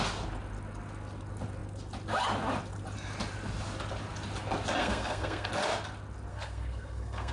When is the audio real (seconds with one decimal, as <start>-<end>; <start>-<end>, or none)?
0.0-4.8; 5.5-6.3